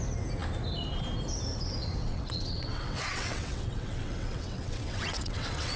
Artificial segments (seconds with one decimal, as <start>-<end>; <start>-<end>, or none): 2.0-5.8